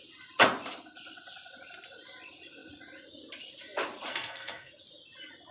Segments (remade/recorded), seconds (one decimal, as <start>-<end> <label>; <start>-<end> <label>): 0.0-4.1 recorded; 4.1-4.7 remade; 4.7-5.5 recorded